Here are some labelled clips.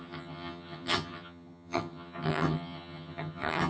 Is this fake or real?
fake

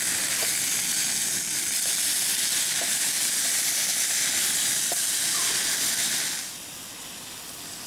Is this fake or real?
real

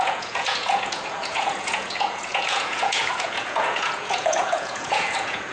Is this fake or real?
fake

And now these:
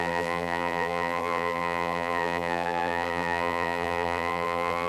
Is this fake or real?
fake